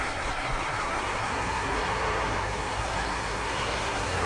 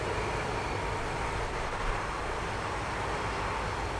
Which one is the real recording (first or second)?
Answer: second